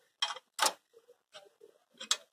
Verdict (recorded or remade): recorded